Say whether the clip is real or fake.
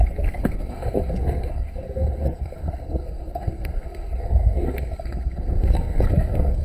fake